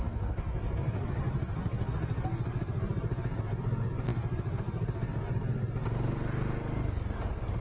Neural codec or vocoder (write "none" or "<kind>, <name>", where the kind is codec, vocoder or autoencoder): none